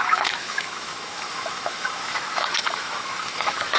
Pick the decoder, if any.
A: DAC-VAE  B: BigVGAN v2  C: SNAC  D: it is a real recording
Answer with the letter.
A